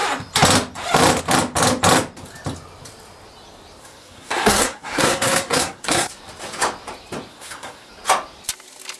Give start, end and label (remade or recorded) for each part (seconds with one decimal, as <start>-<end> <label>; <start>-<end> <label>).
0.0-3.8 recorded; 3.8-6.1 remade; 6.1-7.3 recorded; 7.3-7.9 remade; 7.9-9.0 recorded